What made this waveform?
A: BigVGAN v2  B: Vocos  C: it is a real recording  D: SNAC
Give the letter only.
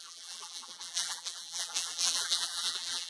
A